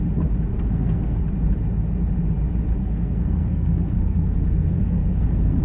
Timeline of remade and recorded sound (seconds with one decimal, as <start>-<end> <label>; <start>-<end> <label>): 0.0-0.5 recorded; 0.5-1.2 remade; 1.2-2.8 recorded; 2.8-5.6 remade